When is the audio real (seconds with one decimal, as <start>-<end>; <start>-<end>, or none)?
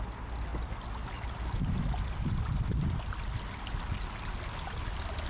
0.0-5.3